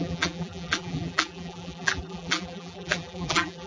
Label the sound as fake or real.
fake